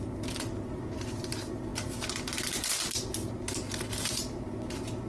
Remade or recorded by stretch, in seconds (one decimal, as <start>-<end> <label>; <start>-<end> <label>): 0.0-5.1 recorded